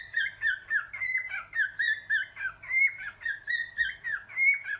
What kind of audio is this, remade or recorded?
recorded